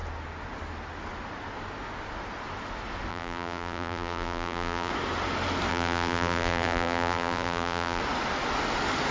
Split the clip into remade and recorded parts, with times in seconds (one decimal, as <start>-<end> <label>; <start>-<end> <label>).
0.0-3.1 recorded; 3.1-4.9 remade; 4.9-5.7 recorded; 5.7-8.0 remade; 8.0-9.1 recorded